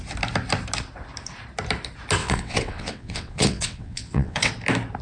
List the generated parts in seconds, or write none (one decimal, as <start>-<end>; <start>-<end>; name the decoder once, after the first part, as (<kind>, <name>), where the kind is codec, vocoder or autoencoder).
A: 2.2-4.5 (vocoder, WaveNeXt)